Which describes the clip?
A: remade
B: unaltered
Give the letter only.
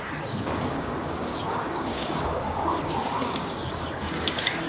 A